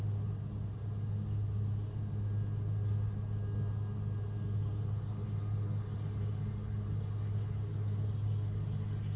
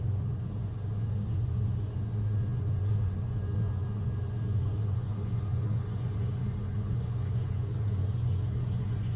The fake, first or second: second